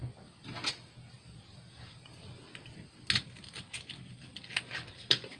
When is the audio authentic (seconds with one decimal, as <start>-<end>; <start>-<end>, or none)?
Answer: 0.0-5.4